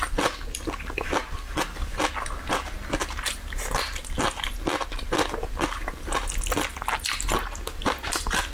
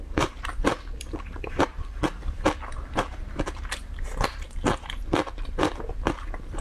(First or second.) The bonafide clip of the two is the first